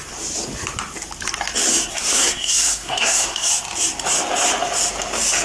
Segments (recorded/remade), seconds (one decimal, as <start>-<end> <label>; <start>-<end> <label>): 0.0-1.9 recorded; 1.9-3.5 remade; 3.5-5.4 recorded